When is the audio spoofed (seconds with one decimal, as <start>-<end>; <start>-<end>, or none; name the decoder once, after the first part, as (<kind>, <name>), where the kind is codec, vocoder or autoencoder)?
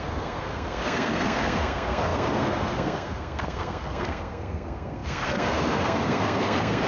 0.0-6.9 (codec, SNAC)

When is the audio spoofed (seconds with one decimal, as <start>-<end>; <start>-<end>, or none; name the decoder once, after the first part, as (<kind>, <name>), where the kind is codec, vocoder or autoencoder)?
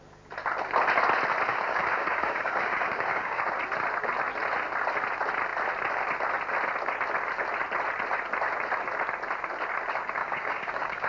1.5-3.5 (codec, DAC); 10.2-11.1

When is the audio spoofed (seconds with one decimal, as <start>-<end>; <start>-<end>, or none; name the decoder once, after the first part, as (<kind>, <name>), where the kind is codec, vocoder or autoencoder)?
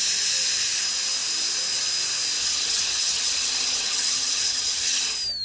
2.4-5.0 (vocoder, HiFi-GAN)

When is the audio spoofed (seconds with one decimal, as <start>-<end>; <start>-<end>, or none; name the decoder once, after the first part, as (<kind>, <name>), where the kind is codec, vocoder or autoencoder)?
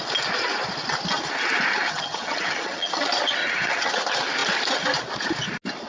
1.7-3.0 (vocoder, HiFi-GAN); 3.4-3.9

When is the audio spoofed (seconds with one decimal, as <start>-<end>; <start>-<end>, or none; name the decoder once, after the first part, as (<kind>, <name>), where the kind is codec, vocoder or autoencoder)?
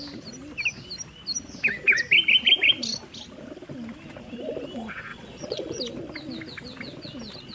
5.1-5.8 (vocoder, Vocos)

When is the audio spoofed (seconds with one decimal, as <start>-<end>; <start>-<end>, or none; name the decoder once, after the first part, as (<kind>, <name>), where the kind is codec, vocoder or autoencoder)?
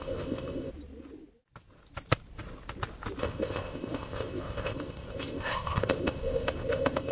0.0-0.7 (codec, ZipCodec); 3.2-7.1